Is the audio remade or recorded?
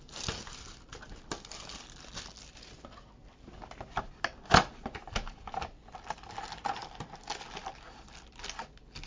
recorded